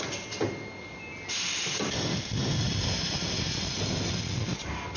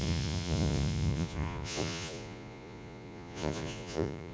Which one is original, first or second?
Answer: first